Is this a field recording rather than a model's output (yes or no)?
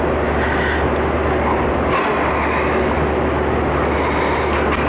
yes